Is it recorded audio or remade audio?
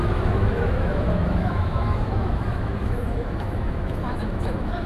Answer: remade